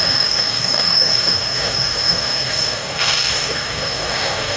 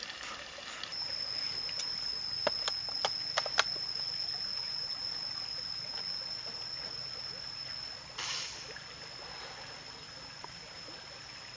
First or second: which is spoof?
first